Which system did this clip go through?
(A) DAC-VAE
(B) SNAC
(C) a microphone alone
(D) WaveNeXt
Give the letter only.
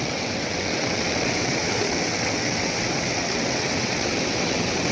D